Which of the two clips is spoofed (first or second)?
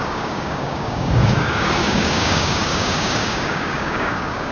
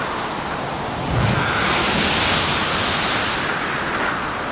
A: first